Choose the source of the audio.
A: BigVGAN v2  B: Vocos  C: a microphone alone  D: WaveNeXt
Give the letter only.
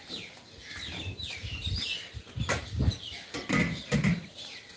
C